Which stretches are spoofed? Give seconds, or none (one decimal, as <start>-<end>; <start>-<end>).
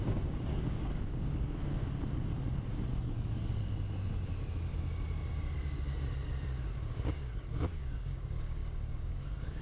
0.0-1.8; 6.9-9.6